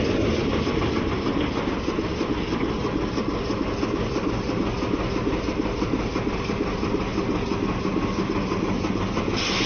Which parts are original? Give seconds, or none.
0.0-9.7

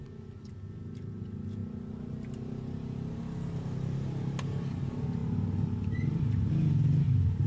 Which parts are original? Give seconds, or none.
0.0-7.5

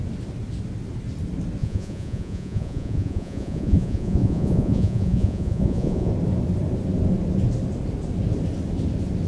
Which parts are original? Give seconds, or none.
0.0-1.6; 6.1-9.3

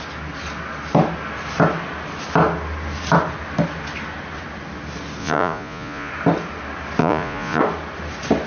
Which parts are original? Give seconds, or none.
0.0-5.2; 6.1-7.0; 7.6-8.5